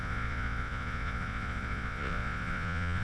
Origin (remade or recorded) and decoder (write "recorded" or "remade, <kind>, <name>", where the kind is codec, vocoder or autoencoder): remade, vocoder, Vocos